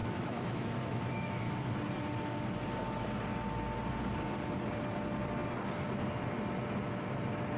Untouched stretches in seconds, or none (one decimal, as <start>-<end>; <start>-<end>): 1.5-7.6